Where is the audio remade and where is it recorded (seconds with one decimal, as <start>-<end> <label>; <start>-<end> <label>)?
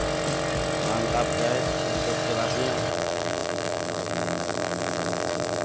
0.0-2.9 recorded; 2.9-5.6 remade